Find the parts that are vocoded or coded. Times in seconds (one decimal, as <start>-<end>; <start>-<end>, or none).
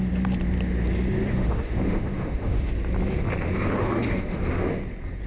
1.3-2.7; 3.8-4.4